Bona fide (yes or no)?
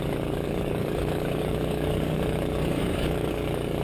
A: no